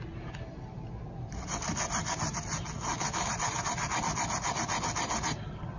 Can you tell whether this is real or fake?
real